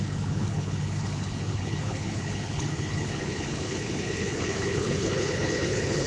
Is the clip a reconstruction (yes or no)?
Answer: yes